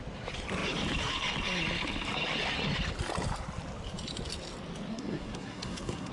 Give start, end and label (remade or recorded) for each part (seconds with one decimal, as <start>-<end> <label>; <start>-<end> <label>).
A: 0.0-4.9 recorded; 4.9-6.1 remade